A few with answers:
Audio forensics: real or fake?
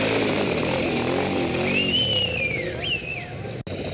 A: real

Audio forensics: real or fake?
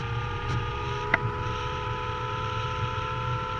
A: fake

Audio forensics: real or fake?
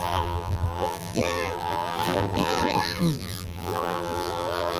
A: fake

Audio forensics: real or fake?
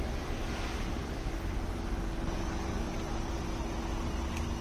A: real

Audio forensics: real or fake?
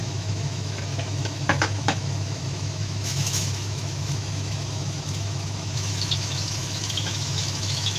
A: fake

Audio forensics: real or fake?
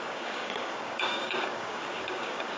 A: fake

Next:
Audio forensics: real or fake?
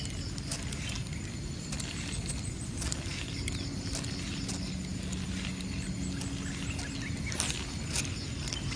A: real